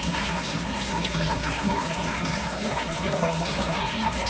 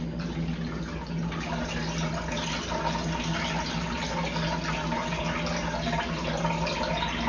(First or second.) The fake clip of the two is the first